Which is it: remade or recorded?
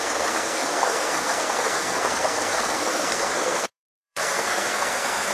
remade